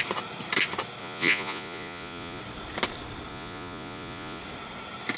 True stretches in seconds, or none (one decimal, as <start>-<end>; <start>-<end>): 0.0-1.0; 2.4-3.3; 4.4-5.2